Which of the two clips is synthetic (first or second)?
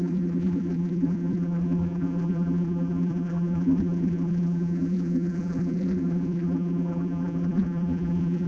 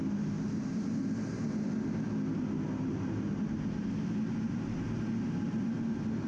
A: first